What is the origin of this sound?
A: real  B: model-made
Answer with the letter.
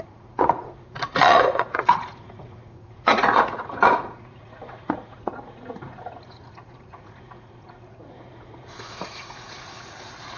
B